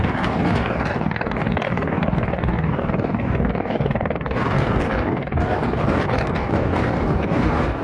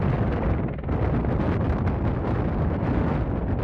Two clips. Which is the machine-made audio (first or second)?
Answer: first